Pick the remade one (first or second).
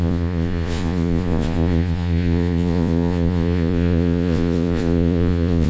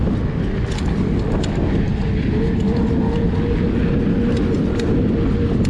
first